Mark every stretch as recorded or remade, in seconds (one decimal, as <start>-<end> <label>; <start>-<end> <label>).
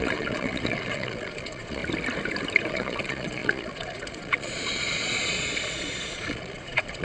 0.0-1.8 remade; 1.8-2.7 recorded; 2.7-7.0 remade